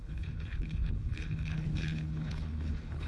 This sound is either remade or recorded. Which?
remade